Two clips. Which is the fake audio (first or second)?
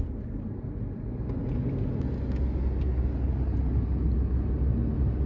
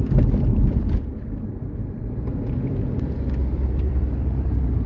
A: second